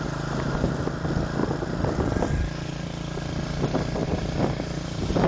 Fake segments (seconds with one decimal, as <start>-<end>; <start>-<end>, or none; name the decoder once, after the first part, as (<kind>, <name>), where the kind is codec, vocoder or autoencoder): 4.0-5.3 (vocoder, BigVGAN v2)